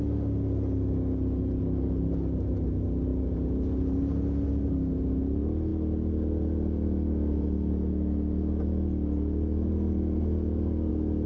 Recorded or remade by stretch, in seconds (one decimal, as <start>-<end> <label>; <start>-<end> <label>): 0.0-11.3 recorded